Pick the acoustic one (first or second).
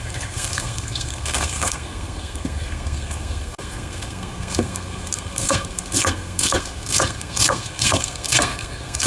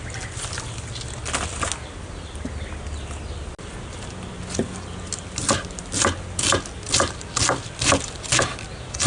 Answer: second